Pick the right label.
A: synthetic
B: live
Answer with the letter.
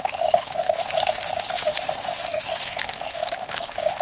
A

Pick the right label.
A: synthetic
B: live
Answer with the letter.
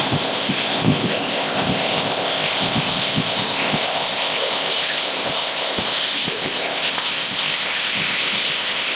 A